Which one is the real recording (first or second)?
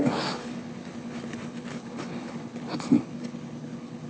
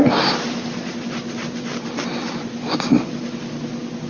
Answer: second